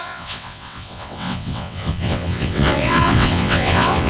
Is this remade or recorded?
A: remade